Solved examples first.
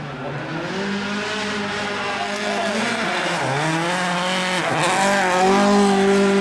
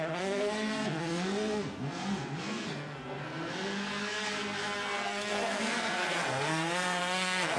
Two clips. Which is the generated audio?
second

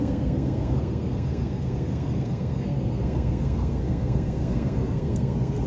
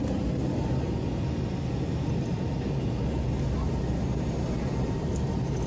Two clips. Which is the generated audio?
first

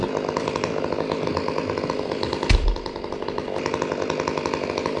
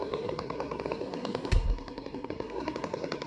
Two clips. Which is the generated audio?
second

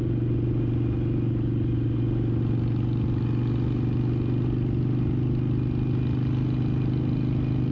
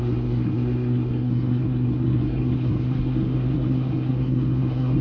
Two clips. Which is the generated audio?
second